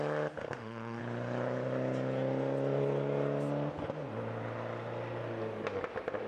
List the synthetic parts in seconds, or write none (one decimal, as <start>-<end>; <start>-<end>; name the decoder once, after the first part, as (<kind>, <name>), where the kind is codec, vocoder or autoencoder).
0.4-1.0 (autoencoder, DAC-VAE)